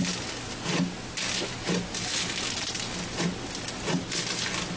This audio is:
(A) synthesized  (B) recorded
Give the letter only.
B